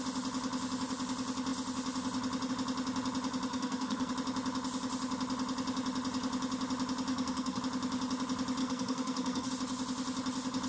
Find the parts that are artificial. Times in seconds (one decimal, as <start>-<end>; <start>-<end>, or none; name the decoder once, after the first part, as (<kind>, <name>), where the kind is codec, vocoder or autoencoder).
3.5-4.1 (codec, SNAC); 7.1-7.6; 8.6-9.5